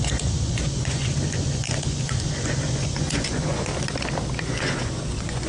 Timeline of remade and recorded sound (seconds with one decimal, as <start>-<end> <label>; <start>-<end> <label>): 0.0-3.7 remade; 3.7-4.4 recorded; 4.4-5.5 remade